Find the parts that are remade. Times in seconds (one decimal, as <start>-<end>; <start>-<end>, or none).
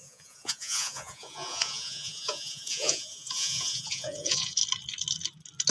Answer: 0.0-4.6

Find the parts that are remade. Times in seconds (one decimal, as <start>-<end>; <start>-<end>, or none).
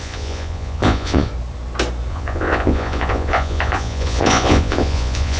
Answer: 0.0-1.3; 2.1-5.4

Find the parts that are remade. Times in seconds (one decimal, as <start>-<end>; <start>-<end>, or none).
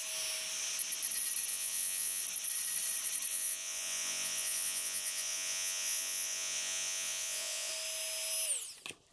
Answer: 1.5-2.2; 3.3-7.7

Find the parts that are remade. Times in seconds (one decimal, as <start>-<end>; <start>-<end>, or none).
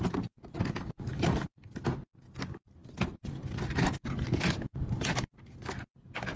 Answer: none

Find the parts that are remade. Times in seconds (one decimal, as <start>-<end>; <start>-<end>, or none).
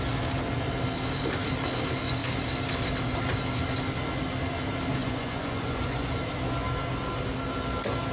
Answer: 5.0-6.1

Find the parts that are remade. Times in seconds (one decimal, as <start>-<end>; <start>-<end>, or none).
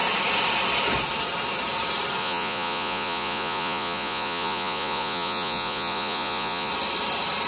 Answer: 2.2-6.7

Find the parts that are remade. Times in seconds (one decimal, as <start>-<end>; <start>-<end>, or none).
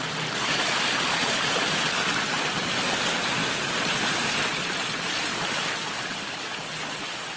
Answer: none